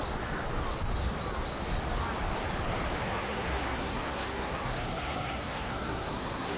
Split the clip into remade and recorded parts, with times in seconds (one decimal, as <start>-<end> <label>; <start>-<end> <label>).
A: 0.0-3.0 recorded; 3.0-6.6 remade